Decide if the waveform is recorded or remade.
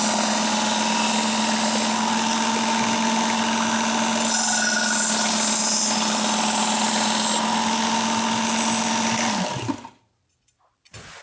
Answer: recorded